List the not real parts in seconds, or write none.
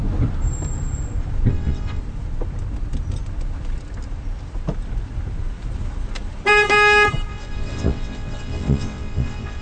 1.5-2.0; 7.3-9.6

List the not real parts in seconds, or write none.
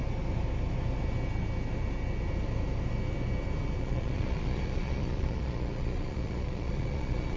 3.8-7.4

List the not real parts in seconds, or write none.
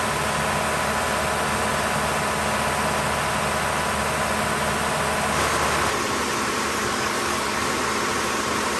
6.7-7.8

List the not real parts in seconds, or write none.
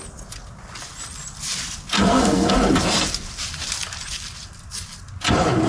2.0-2.5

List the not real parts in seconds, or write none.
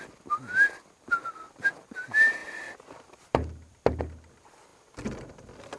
2.4-4.0; 4.7-5.8